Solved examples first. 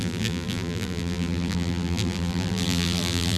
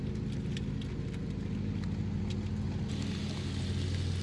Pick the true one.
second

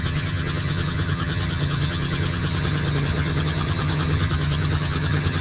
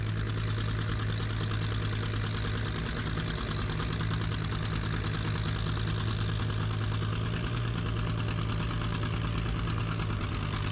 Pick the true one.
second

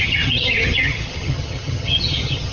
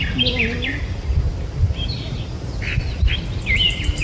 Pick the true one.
second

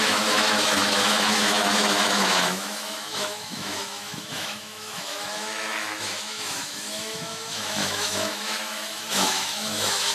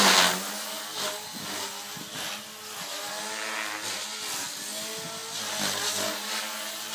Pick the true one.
second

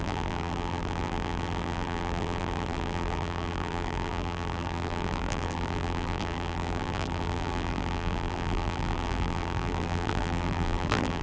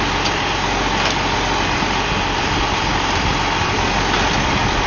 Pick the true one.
second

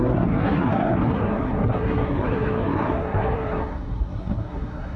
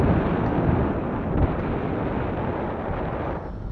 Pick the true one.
second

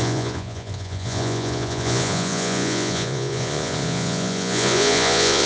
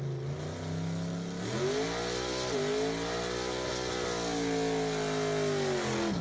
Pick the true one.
second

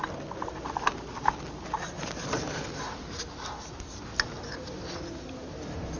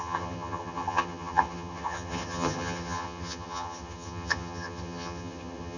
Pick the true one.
first